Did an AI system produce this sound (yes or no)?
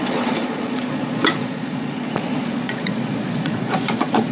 yes